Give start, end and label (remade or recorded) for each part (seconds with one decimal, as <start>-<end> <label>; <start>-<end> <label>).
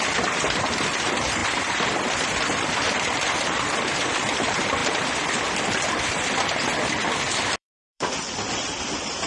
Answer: 0.0-4.8 remade; 4.8-5.6 recorded; 5.6-6.7 remade; 6.7-7.5 recorded; 7.5-9.3 remade